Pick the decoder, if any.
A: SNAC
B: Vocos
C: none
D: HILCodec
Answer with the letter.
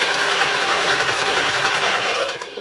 A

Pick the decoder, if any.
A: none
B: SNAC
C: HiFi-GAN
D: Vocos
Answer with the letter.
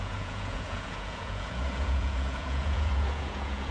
D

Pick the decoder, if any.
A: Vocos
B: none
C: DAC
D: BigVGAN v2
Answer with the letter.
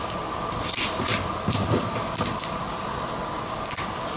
B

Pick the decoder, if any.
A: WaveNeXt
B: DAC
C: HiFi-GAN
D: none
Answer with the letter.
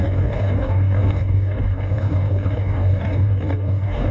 B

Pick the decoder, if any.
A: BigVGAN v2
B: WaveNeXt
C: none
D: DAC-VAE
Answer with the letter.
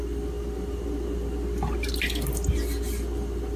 C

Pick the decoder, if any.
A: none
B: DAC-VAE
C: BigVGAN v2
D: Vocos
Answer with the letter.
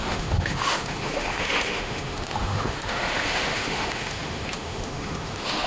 B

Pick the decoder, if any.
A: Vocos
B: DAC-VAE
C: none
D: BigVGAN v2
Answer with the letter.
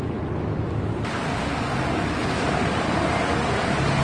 C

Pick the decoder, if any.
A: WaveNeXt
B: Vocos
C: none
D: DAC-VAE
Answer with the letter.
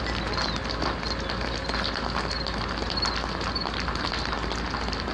C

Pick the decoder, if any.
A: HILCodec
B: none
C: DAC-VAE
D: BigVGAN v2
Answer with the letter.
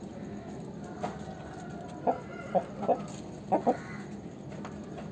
B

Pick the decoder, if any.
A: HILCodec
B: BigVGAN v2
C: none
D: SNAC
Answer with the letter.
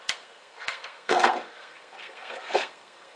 D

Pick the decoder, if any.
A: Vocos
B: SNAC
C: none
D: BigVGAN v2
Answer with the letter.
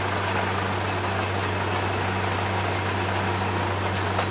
C